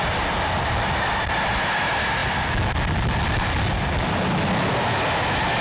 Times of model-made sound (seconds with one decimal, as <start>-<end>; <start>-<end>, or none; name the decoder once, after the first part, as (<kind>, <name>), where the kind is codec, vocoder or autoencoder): none